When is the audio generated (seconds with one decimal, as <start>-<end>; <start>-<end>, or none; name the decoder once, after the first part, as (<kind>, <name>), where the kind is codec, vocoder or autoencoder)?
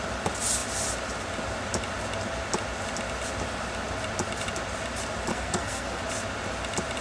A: 5.3-6.0 (codec, SNAC)